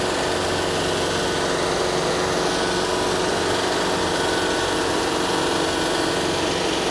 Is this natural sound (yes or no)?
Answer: yes